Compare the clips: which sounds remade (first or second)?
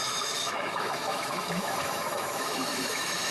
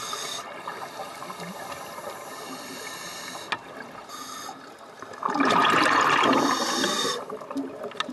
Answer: first